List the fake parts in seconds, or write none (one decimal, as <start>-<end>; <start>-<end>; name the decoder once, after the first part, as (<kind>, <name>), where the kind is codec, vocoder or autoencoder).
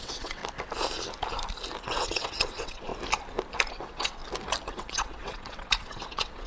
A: 0.0-0.4 (vocoder, WaveNeXt); 1.8-2.9; 3.7-4.2; 4.7-6.5